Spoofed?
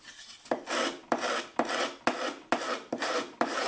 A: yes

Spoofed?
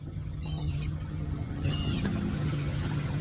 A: yes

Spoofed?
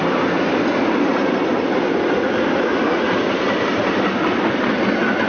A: no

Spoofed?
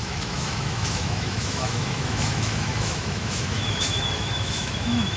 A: yes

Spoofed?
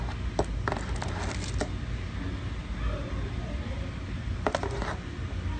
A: no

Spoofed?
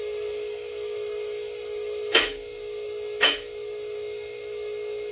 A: yes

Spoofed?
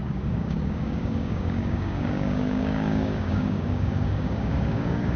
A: yes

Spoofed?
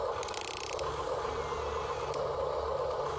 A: no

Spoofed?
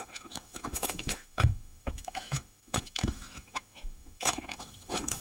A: yes